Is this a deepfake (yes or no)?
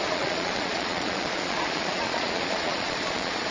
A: yes